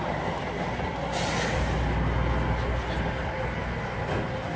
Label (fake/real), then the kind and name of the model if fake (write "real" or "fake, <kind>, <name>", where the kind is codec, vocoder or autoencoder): real